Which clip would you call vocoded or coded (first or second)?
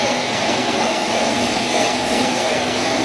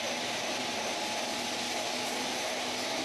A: first